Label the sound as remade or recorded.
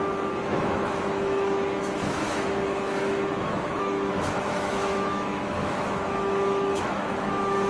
remade